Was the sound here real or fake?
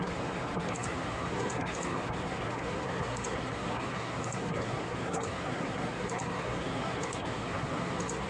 fake